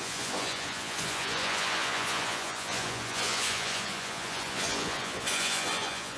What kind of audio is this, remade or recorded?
remade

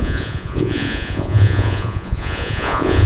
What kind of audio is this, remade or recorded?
remade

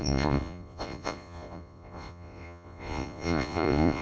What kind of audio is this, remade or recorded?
remade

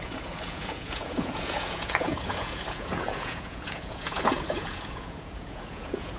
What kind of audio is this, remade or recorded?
remade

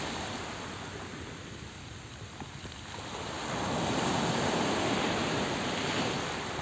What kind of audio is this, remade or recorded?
recorded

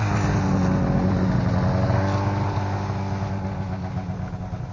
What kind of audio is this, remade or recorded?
recorded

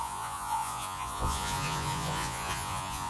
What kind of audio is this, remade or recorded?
remade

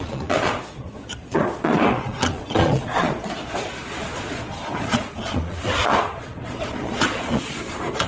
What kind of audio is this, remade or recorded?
remade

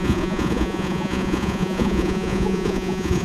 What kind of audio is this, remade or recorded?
remade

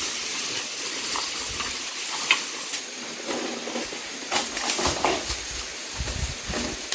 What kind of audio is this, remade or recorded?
recorded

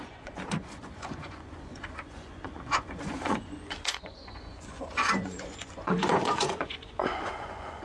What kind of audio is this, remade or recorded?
remade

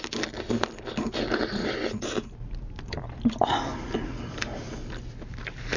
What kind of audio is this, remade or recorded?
recorded